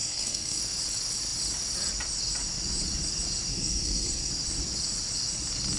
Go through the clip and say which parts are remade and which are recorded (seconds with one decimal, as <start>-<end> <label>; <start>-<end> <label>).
0.0-0.6 remade; 0.6-3.5 recorded; 3.5-4.3 remade; 4.3-5.8 recorded